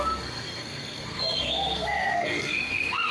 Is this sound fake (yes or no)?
yes